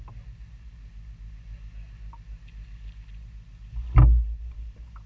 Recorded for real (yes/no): yes